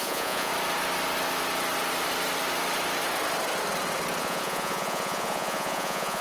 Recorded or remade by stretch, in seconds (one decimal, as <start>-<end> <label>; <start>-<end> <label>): 0.0-0.5 remade; 0.5-4.2 recorded; 4.2-6.2 remade